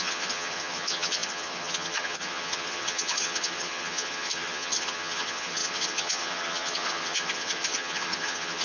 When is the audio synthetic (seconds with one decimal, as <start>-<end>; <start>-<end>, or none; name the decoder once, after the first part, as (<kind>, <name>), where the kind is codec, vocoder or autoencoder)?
0.0-8.6 (vocoder, HiFi-GAN)